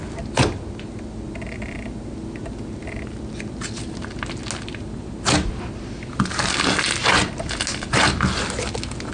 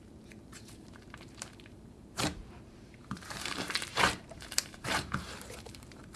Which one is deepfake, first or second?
second